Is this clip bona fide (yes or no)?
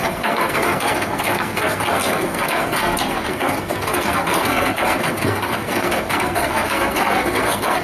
no